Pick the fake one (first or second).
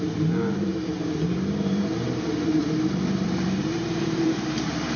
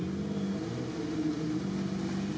first